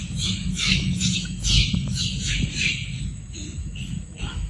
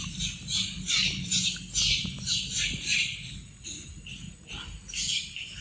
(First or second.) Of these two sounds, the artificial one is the first